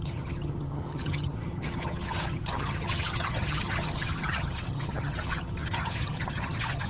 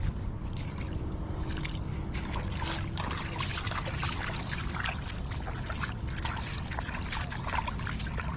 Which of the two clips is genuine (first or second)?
second